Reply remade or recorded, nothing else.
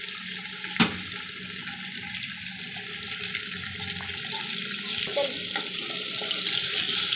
recorded